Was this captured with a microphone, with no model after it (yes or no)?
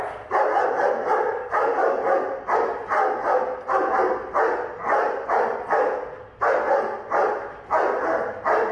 yes